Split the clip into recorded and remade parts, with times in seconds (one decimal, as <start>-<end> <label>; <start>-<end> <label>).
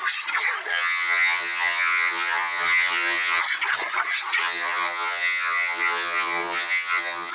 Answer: 0.0-0.7 recorded; 0.7-3.4 remade; 3.4-4.4 recorded; 4.4-7.3 remade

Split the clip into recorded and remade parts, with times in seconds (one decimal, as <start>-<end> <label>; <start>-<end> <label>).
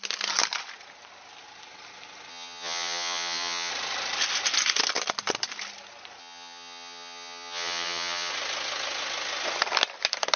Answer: 0.0-2.3 recorded; 2.3-3.7 remade; 3.7-6.2 recorded; 6.2-8.3 remade; 8.3-10.4 recorded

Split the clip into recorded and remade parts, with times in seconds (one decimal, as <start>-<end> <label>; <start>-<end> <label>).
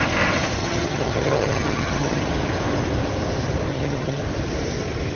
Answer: 0.0-0.6 recorded; 0.6-2.2 remade; 2.2-3.7 recorded; 3.7-4.2 remade; 4.2-5.2 recorded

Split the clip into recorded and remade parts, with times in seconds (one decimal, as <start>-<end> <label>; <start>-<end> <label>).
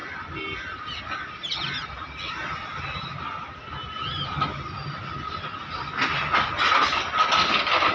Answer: 0.0-7.9 recorded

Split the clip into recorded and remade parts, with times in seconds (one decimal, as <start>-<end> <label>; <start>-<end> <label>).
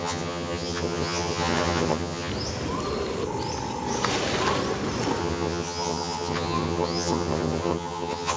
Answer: 0.0-2.3 remade; 2.3-5.2 recorded; 5.2-8.4 remade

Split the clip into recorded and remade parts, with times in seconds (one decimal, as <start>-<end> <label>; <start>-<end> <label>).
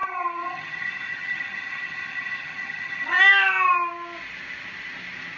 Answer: 0.0-3.2 remade; 3.2-5.4 recorded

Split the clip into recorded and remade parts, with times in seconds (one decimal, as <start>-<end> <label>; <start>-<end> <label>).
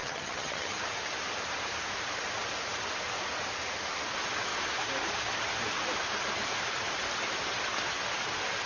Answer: 0.0-0.8 remade; 0.8-8.7 recorded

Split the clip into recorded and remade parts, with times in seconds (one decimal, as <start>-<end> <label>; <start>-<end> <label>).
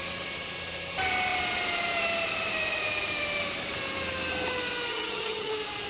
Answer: 0.0-4.9 recorded; 4.9-5.5 remade; 5.5-5.9 recorded